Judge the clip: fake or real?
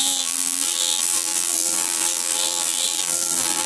fake